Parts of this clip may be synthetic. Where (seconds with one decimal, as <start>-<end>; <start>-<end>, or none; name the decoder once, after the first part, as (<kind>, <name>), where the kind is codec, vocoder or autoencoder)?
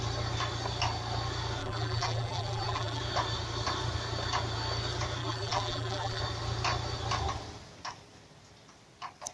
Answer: 1.6-3.0 (vocoder, BigVGAN v2); 5.2-6.2